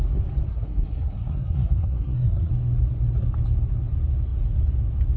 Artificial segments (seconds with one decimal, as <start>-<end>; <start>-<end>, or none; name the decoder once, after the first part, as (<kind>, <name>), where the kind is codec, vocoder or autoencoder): 0.5-2.5 (codec, SNAC)